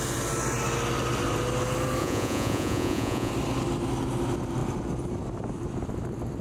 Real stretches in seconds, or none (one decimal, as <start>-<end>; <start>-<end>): 0.0-2.0; 3.3-6.4